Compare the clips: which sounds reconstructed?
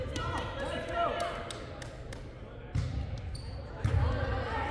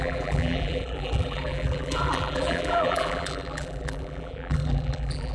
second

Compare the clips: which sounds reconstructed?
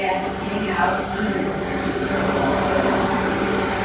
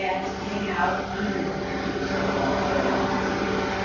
first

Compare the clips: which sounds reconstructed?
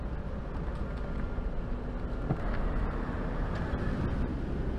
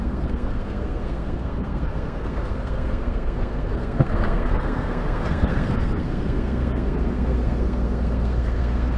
second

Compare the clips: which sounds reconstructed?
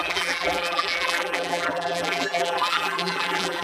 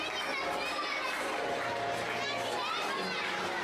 first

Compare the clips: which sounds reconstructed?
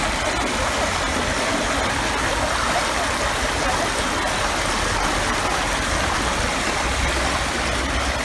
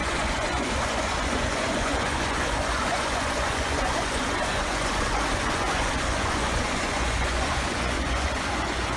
second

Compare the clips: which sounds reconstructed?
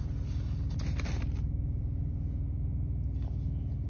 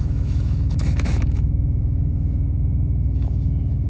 second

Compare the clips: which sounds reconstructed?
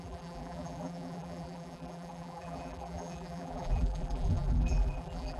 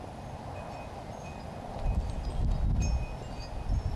first